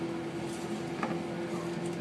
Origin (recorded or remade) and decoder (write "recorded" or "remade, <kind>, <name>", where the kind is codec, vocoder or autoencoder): recorded